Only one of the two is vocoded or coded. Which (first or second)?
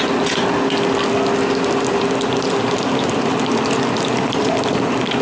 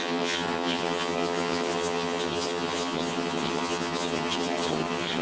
second